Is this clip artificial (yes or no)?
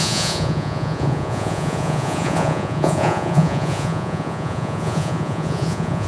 yes